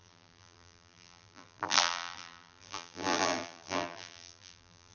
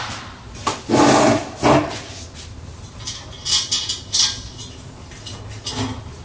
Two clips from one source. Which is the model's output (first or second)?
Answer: first